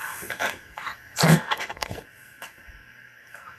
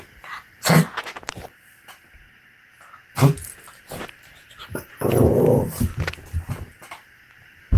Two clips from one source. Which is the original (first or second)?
second